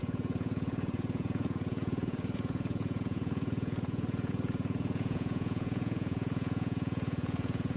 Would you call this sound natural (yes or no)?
no